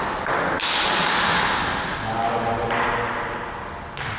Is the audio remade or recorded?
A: recorded